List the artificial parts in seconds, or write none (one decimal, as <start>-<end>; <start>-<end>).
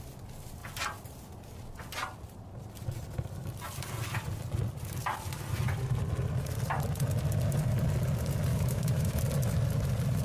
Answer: 8.5-9.2